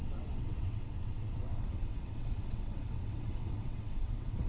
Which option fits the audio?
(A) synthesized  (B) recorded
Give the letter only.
A